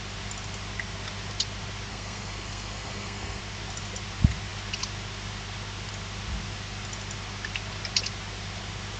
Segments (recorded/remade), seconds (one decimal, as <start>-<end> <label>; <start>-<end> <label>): 0.0-1.9 recorded; 1.9-3.4 remade; 3.4-9.0 recorded